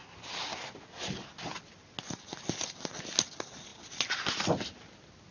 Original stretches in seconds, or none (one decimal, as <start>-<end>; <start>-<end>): 0.0-5.3

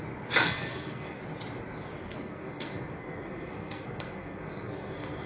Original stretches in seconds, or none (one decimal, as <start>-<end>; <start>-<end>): 0.0-0.4; 1.2-2.0